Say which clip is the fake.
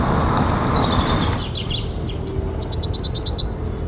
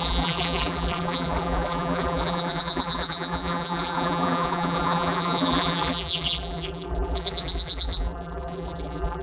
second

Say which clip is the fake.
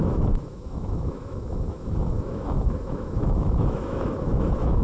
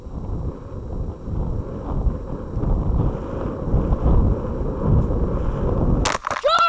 first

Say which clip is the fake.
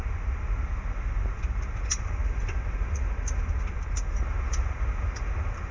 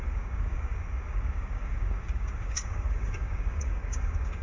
second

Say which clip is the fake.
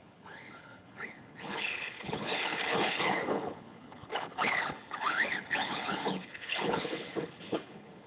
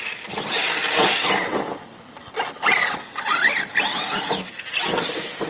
first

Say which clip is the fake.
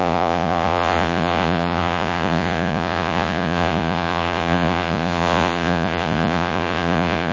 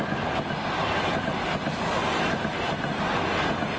first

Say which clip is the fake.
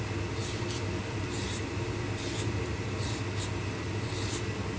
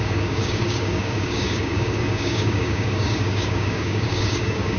second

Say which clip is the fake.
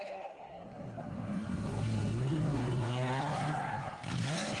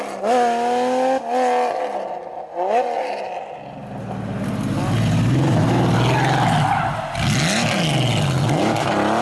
first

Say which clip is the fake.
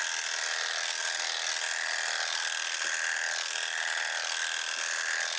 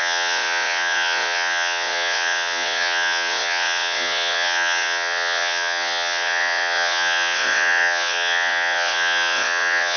second